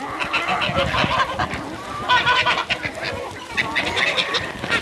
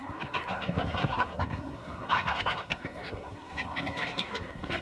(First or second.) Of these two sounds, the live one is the first